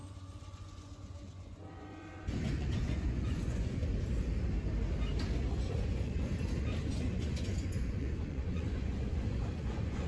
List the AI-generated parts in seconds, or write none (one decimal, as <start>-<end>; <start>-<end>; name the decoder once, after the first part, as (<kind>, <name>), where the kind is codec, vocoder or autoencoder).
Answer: 0.0-3.8 (vocoder, Vocos); 5.5-6.3; 6.9-10.1